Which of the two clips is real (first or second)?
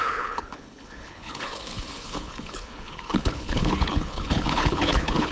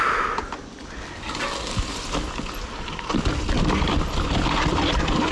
second